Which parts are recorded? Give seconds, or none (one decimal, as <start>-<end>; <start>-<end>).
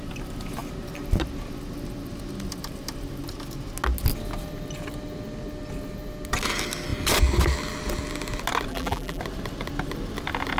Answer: 0.0-8.7; 9.2-10.6